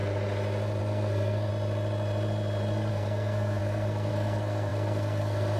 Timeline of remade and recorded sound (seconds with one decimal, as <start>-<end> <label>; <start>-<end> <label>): 0.0-0.8 recorded; 0.8-1.5 remade; 1.5-2.9 recorded; 2.9-5.6 remade